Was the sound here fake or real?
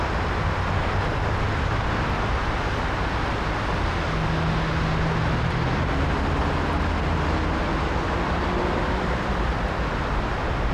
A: real